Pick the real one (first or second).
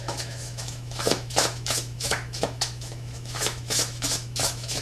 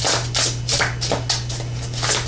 second